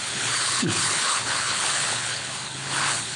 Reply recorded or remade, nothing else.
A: remade